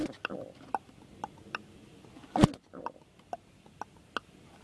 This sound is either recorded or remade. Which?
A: recorded